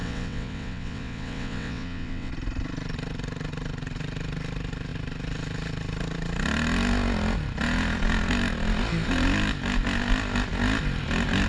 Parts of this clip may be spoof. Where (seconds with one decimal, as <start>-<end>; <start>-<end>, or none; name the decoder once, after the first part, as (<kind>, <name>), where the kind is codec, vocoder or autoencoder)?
0.0-2.3 (vocoder, WaveNeXt)